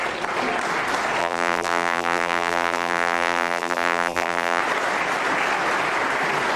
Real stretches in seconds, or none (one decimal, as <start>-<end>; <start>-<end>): 0.0-1.2; 4.6-6.6

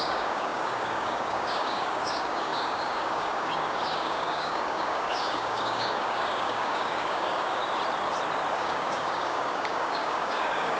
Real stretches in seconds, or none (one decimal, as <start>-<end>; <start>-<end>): 7.6-8.5

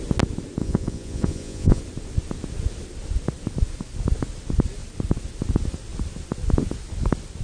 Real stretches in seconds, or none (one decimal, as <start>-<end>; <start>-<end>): 0.0-0.6; 1.8-7.4

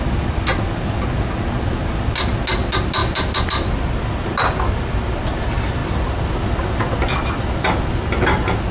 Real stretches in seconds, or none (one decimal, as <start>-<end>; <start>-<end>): 0.0-8.7

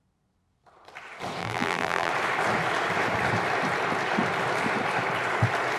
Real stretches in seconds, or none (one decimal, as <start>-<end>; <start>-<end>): 0.0-1.4; 2.1-5.8